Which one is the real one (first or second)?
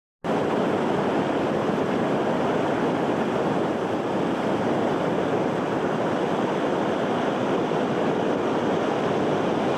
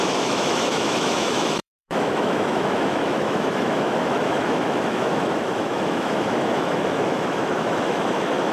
first